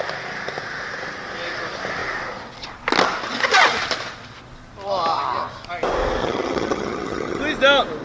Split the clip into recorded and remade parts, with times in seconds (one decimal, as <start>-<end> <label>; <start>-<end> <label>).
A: 0.0-6.2 recorded; 6.2-7.4 remade; 7.4-8.0 recorded